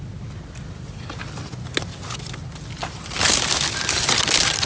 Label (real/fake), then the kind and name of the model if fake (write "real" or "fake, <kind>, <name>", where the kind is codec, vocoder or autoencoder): real